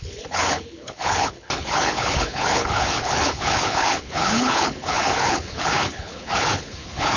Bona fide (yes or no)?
no